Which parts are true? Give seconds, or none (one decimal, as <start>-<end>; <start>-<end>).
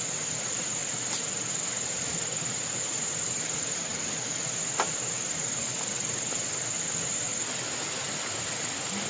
0.8-1.9; 7.3-8.2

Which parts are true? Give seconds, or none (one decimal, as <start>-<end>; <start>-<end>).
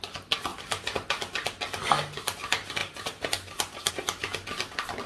0.0-0.5; 1.1-2.8; 3.9-5.1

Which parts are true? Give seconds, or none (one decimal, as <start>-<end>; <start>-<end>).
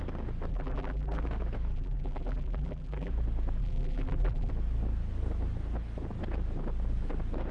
0.0-0.5; 1.2-1.7; 3.1-3.6; 4.5-7.5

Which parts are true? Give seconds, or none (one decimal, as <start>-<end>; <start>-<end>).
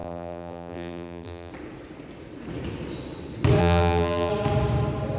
1.5-3.6; 4.3-5.2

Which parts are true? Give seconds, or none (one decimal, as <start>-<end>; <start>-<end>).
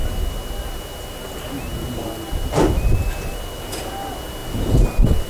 0.0-5.3